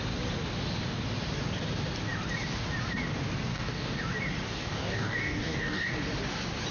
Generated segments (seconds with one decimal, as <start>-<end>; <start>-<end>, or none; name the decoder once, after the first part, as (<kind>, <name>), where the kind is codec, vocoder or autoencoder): 3.5-4.0 (codec, DAC); 4.5-5.9